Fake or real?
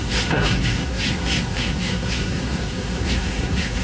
fake